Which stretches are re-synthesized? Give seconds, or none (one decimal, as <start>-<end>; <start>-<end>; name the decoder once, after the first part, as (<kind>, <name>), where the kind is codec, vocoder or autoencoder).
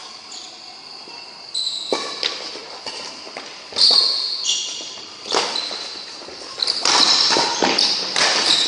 none